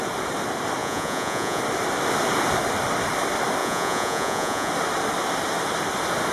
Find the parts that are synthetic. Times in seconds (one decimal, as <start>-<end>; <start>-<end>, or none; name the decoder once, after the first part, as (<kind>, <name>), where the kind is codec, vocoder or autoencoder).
0.8-1.6 (vocoder, Vocos); 3.6-4.7